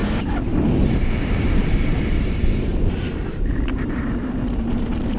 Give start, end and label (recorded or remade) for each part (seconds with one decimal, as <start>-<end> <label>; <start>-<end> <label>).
0.0-1.6 recorded; 1.6-2.7 remade; 2.7-3.3 recorded; 3.3-5.2 remade